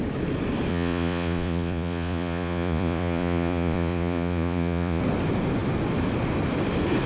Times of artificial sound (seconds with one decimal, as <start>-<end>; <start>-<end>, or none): 0.7-5.0